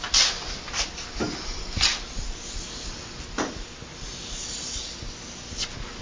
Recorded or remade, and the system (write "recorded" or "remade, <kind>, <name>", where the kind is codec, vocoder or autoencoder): recorded